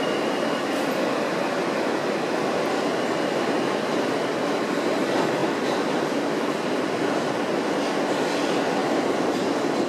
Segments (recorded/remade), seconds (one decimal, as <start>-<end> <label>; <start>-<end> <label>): 0.0-8.8 recorded; 8.8-9.4 remade; 9.4-9.9 recorded